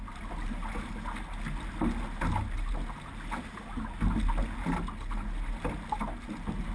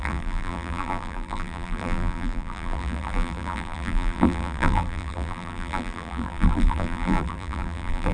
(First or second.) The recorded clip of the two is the first